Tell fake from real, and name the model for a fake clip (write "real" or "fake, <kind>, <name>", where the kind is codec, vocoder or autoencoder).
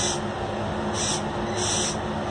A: real